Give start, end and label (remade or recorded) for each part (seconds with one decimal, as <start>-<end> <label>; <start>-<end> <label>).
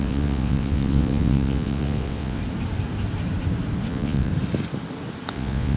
0.0-2.4 remade; 2.4-3.9 recorded; 3.9-4.3 remade; 4.3-5.3 recorded; 5.3-5.8 remade